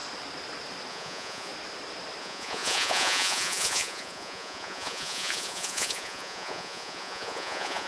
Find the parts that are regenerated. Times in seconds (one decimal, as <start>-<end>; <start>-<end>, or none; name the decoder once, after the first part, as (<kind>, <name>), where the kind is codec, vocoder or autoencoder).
0.9-1.5 (vocoder, Vocos); 2.2-7.9